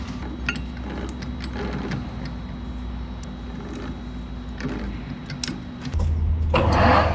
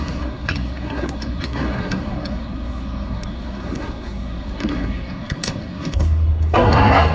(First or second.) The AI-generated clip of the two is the second